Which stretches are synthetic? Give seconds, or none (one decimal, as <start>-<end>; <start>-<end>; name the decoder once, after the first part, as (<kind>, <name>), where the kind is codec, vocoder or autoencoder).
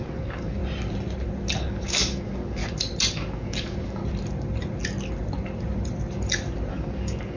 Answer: 0.0-0.6 (codec, DAC); 1.6-2.6; 3.1-4.0; 6.7-7.4